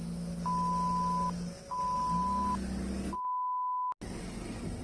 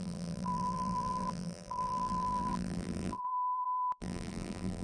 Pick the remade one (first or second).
second